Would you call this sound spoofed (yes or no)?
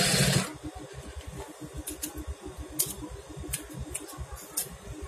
no